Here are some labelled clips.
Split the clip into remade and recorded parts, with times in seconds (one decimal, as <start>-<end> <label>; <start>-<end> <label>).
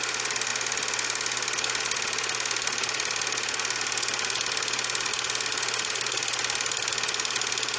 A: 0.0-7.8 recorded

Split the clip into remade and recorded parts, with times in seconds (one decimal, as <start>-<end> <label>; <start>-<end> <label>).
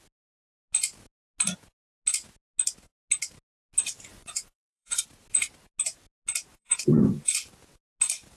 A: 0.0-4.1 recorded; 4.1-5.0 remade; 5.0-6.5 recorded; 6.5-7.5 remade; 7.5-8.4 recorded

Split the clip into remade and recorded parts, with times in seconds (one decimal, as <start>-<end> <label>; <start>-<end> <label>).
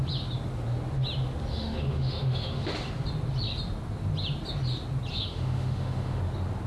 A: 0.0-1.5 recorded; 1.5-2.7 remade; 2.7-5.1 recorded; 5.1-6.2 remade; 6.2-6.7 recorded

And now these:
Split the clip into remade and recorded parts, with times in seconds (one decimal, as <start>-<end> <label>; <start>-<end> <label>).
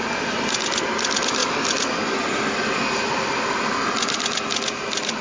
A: 0.0-5.2 recorded